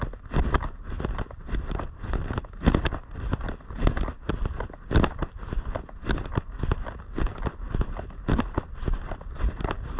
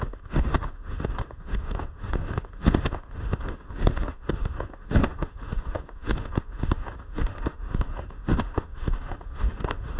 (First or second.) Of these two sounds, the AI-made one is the second